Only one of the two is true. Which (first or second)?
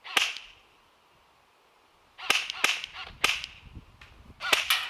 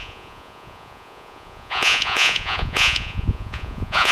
first